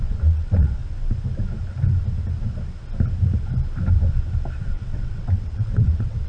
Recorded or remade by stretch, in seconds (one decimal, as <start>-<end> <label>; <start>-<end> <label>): 0.0-0.8 remade; 0.8-4.6 recorded; 4.6-6.3 remade